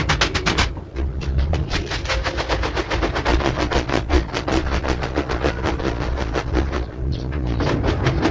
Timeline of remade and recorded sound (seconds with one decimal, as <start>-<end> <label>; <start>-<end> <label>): 0.0-0.9 recorded; 0.9-1.9 remade; 1.9-3.3 recorded; 3.3-7.6 remade; 7.6-8.3 recorded